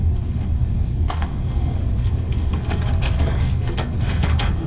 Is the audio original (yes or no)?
no